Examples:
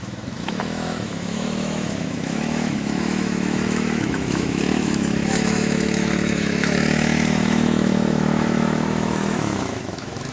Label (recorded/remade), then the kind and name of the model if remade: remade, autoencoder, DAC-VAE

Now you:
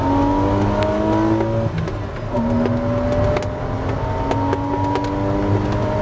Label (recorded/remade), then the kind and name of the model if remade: recorded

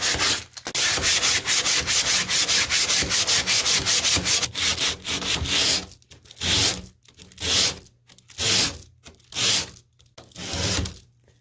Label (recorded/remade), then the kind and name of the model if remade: recorded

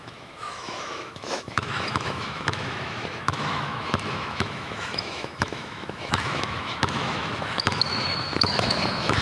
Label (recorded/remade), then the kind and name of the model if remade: remade, autoencoder, DAC-VAE